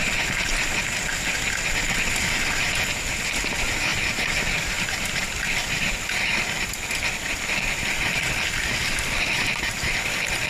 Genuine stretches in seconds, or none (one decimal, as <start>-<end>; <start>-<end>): 0.0-10.5